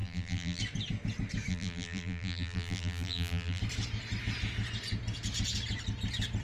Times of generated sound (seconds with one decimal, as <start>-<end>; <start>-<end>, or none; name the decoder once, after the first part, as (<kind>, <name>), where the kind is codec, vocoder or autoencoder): 0.0-0.6 (vocoder, BigVGAN v2); 1.5-3.6